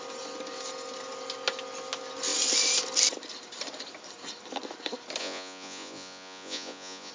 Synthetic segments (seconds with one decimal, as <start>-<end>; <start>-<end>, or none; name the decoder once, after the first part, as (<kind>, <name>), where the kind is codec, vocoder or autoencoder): 5.2-7.1 (vocoder, Vocos)